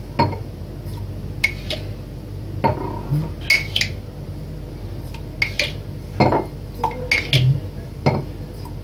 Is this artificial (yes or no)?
no